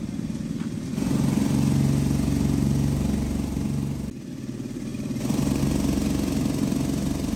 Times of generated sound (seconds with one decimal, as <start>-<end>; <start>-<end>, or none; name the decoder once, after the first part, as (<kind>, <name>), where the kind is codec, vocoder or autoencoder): 4.9-5.6 (vocoder, BigVGAN v2)